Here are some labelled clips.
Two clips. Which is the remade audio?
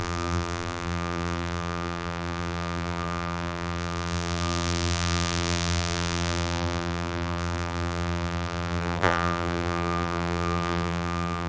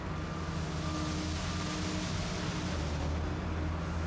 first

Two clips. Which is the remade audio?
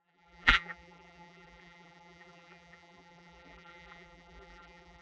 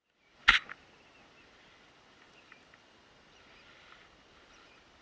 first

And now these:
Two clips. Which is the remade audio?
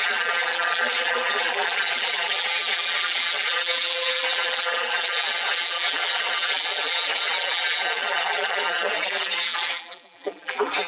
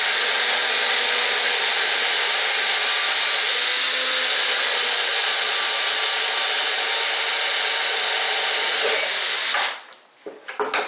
first